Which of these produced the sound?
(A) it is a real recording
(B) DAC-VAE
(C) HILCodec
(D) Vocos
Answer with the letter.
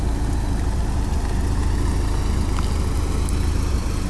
A